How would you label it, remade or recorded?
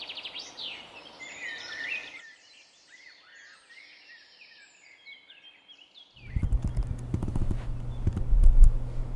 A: recorded